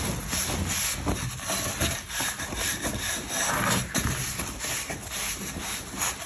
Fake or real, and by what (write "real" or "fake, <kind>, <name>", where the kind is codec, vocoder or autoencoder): real